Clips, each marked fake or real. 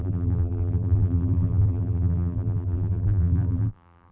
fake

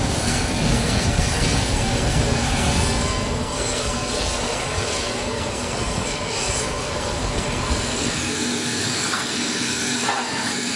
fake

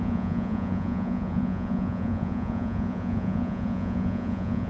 fake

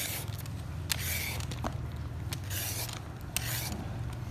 real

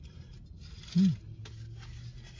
real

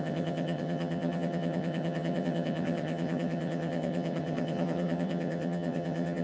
fake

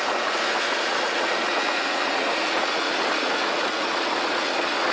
fake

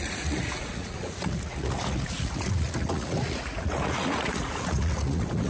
fake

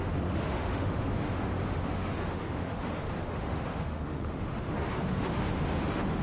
fake